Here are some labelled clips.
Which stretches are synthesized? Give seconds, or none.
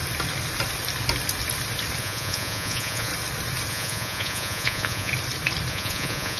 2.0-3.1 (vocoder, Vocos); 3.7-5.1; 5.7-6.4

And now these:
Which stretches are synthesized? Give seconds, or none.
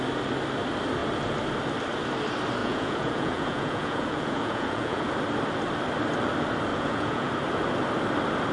2.6-5.1 (vocoder, Vocos); 6.7-7.3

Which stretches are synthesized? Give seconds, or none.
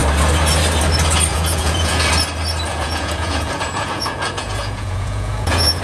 1.3-2.1 (vocoder, Vocos); 2.7-5.8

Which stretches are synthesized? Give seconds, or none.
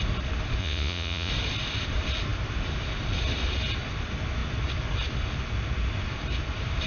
0.6-1.3 (vocoder, Vocos)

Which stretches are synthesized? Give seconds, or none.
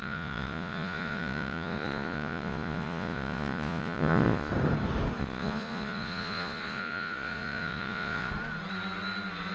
0.0-4.5 (vocoder, Vocos); 5.2-8.3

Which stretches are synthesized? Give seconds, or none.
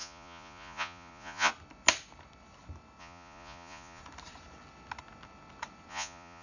0.0-1.5 (vocoder, Vocos); 3.0-4.0; 5.9-6.4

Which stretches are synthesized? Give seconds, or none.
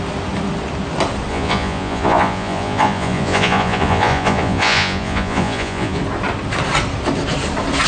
1.3-6.0 (vocoder, Vocos)